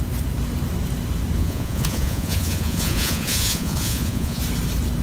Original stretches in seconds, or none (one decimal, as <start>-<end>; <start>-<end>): 0.0-1.4; 4.4-5.0